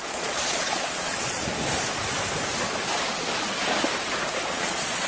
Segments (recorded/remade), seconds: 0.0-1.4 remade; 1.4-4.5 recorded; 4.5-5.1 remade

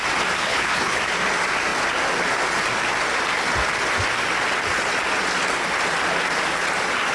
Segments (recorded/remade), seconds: 0.0-0.4 recorded; 0.4-1.0 remade; 1.0-7.1 recorded

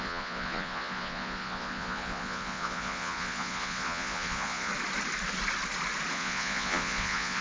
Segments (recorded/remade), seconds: 0.0-4.7 remade; 4.7-6.1 recorded; 6.1-7.4 remade

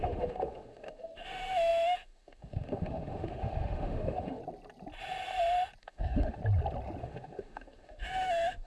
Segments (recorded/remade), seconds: 0.0-4.4 remade; 4.4-5.8 recorded; 5.8-6.4 remade; 6.4-7.0 recorded; 7.0-8.7 remade